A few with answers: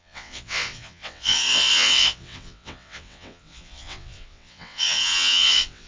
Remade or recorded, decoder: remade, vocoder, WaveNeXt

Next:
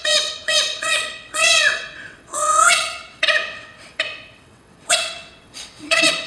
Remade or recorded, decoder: remade, vocoder, WaveNeXt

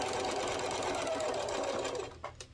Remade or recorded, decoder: recorded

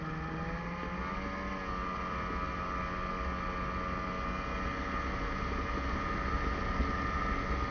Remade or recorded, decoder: recorded